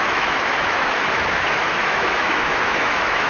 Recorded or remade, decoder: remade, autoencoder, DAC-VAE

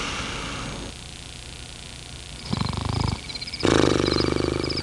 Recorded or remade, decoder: recorded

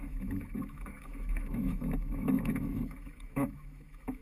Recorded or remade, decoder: remade, autoencoder, DAC-VAE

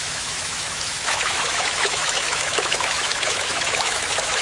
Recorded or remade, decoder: remade, autoencoder, DAC-VAE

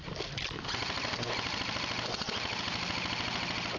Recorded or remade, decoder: recorded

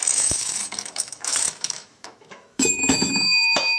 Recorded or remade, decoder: remade, autoencoder, DAC-VAE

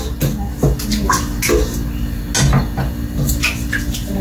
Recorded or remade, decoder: recorded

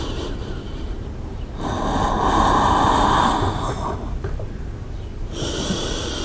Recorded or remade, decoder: recorded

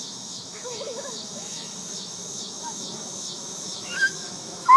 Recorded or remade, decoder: remade, autoencoder, DAC-VAE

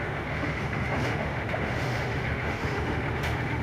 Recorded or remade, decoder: remade, autoencoder, DAC-VAE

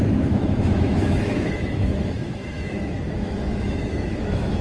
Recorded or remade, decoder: remade, autoencoder, DAC-VAE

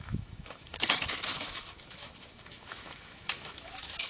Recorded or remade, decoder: remade, autoencoder, DAC-VAE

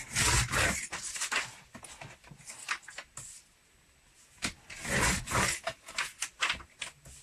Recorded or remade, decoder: recorded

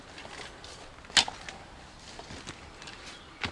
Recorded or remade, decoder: recorded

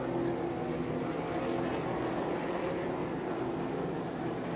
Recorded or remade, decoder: recorded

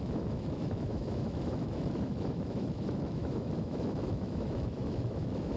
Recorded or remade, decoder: remade, autoencoder, DAC-VAE